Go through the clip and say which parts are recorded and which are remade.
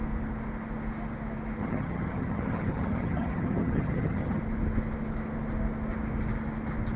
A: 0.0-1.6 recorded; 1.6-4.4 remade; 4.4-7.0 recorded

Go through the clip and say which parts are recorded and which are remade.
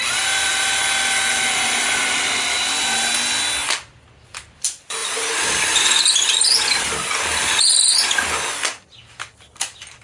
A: 0.0-5.0 recorded; 5.0-7.1 remade; 7.1-10.0 recorded